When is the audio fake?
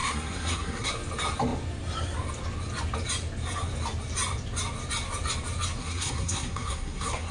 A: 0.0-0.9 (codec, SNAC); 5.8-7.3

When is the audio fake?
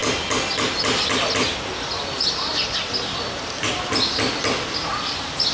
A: none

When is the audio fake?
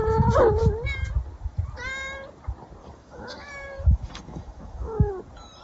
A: 2.8-5.1 (autoencoder, DAC-VAE)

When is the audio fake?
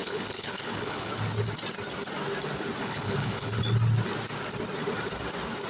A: 0.0-1.1 (codec, HILCodec); 2.8-3.6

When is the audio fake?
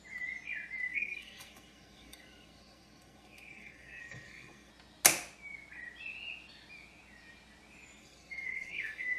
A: 0.9-4.7 (codec, SNAC); 8.0-9.2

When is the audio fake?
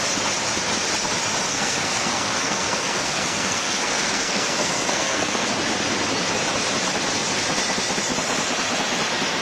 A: 1.5-5.5 (codec, SNAC)